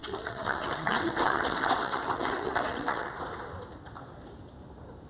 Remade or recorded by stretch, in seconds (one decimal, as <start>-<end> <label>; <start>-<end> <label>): 0.0-3.1 remade; 3.1-5.1 recorded